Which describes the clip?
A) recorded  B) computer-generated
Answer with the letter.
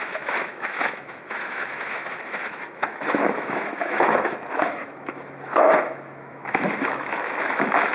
B